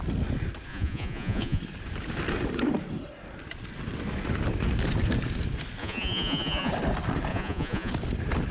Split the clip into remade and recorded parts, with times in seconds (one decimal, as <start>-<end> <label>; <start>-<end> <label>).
0.0-0.7 recorded; 0.7-1.6 remade; 1.6-5.8 recorded; 5.8-6.7 remade; 6.7-7.3 recorded; 7.3-7.9 remade; 7.9-8.5 recorded